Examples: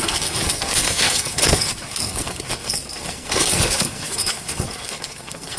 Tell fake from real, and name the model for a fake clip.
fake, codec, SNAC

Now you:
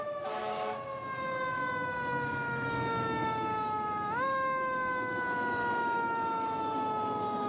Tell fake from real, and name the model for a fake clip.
fake, autoencoder, DAC-VAE